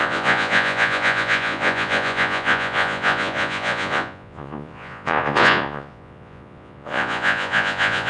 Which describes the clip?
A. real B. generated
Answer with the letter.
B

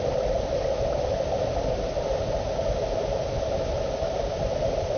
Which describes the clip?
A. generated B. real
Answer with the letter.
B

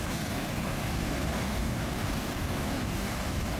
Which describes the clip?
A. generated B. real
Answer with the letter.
A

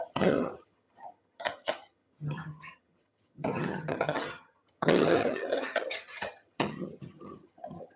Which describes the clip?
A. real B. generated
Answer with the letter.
B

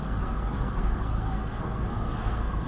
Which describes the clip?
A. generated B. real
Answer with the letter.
A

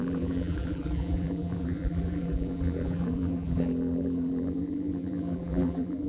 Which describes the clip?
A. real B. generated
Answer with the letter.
B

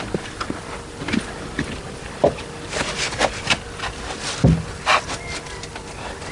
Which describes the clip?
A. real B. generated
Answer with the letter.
A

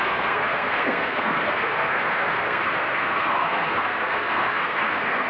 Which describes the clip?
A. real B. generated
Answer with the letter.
B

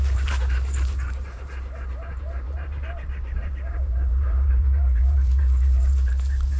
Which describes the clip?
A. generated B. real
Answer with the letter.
A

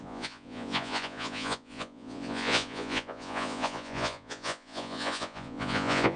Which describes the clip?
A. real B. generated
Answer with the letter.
B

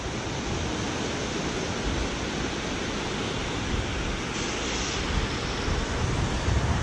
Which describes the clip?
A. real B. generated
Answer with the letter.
A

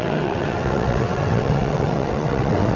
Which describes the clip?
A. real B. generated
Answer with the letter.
B